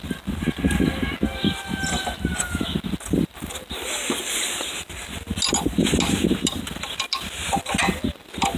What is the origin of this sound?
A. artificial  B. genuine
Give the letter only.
B